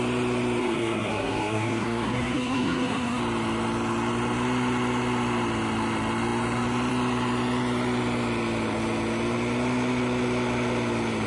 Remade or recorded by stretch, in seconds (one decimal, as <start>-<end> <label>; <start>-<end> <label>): 0.0-0.6 recorded; 0.6-3.2 remade; 3.2-11.3 recorded